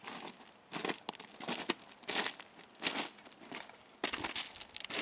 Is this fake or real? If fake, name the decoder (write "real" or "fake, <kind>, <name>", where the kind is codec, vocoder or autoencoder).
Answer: real